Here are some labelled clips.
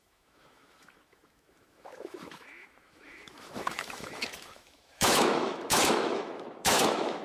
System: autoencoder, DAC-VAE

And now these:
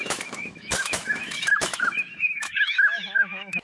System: autoencoder, DAC-VAE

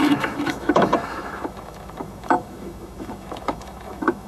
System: autoencoder, DAC-VAE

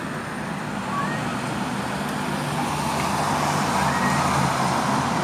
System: none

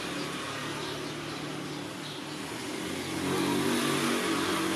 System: none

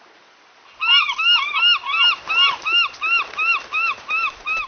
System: none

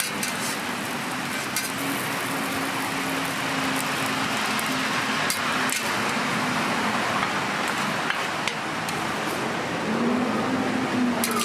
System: none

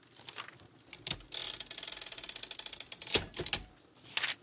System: none